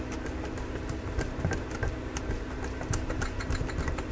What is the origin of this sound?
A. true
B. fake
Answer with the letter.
A